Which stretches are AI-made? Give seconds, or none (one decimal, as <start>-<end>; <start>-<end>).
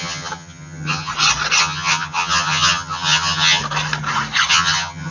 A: 0.0-1.1; 1.6-3.6; 4.5-5.1